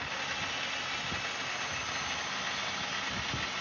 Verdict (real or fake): real